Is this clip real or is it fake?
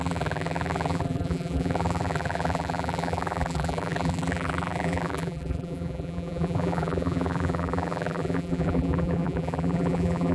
fake